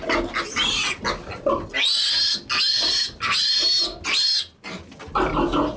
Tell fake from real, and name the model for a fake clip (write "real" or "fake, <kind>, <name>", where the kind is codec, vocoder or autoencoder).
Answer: real